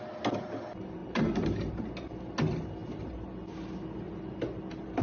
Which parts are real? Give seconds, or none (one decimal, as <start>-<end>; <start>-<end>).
0.0-1.0; 1.9-5.0